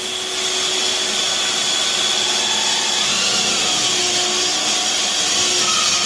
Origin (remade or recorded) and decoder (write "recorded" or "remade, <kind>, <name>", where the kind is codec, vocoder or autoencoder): recorded